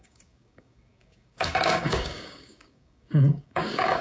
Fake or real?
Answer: fake